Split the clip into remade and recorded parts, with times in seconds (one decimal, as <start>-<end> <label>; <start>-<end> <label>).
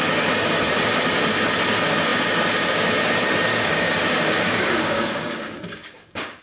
0.0-3.5 recorded; 3.5-6.4 remade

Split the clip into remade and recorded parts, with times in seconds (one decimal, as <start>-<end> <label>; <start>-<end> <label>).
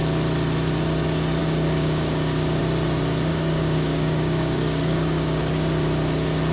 0.0-1.4 recorded; 1.4-2.6 remade; 2.6-3.3 recorded; 3.3-5.5 remade; 5.5-6.5 recorded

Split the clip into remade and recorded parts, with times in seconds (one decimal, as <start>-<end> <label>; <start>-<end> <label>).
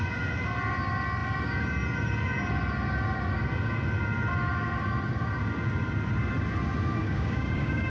0.0-7.0 recorded; 7.0-7.9 remade